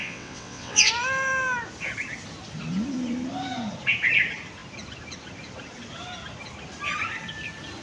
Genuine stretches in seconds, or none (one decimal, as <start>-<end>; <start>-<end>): 0.9-7.8